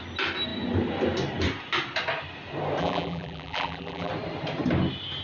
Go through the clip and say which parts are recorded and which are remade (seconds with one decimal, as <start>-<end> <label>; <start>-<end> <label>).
0.0-2.8 recorded; 2.8-4.1 remade; 4.1-5.2 recorded